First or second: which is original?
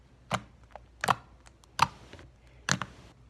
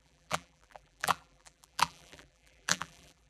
first